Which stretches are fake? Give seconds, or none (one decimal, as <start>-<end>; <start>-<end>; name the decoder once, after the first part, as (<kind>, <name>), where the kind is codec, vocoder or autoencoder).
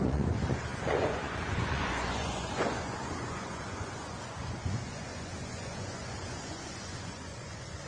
0.0-7.9 (vocoder, Vocos)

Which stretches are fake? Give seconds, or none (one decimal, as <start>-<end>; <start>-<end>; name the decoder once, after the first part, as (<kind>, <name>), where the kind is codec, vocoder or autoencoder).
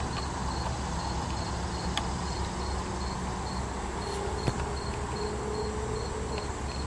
none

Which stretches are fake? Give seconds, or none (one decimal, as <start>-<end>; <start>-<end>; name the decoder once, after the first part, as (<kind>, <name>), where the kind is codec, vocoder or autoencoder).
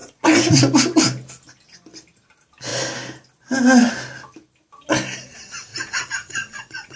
0.0-0.6 (vocoder, Vocos); 5.7-7.0